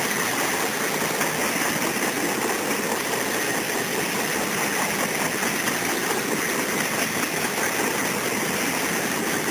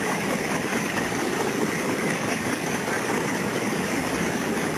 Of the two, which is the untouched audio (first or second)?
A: first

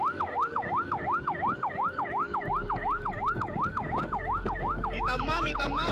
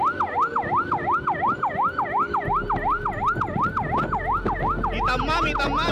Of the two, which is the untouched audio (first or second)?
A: second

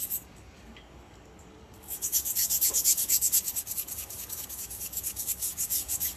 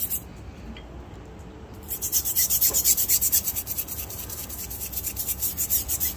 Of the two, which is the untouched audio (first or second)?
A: second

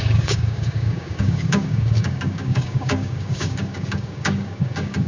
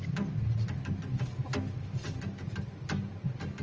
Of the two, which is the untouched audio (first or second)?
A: second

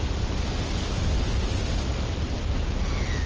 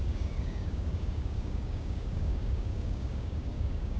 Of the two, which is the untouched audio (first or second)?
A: first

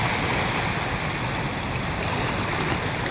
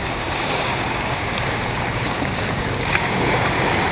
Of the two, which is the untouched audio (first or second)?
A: first